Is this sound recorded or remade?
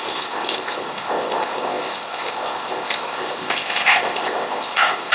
remade